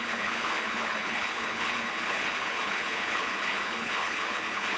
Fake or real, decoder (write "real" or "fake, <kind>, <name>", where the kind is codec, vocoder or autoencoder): fake, codec, HILCodec